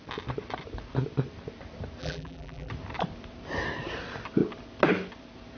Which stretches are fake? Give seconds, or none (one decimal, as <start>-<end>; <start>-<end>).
2.0-2.7